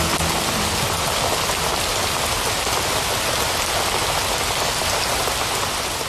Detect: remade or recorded recorded